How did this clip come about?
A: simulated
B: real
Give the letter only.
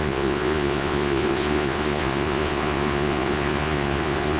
A